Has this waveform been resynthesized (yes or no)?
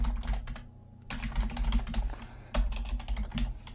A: no